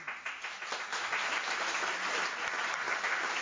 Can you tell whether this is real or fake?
real